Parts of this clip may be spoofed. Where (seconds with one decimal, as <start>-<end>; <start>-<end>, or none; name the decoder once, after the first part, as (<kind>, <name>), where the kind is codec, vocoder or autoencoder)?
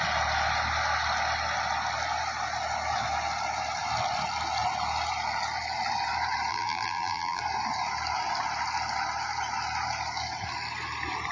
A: 6.5-7.4 (vocoder, BigVGAN v2)